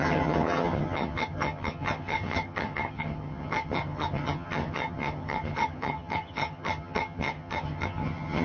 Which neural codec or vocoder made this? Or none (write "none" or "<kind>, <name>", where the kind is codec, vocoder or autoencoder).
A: vocoder, HiFi-GAN